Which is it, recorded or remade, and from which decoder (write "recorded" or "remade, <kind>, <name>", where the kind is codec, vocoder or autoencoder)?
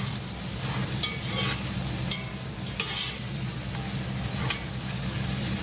recorded